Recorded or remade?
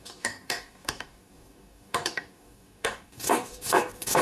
remade